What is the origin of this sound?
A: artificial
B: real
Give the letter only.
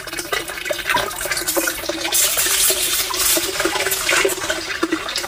B